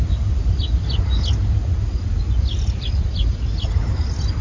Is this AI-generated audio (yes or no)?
no